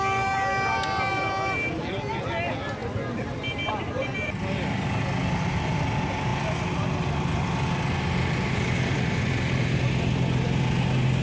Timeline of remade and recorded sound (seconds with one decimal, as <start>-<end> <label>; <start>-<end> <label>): 0.0-11.2 recorded